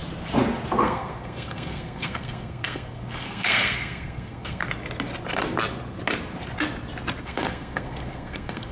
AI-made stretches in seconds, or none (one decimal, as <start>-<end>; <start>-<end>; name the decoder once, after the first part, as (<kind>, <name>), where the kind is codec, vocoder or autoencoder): 0.8-4.6 (codec, SNAC); 7.2-8.7